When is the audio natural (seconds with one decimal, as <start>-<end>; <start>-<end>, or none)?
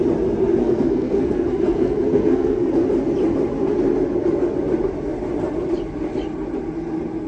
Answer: 0.0-0.6; 2.7-7.3